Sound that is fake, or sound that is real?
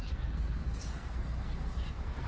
fake